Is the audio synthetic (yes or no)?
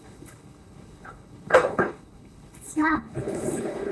yes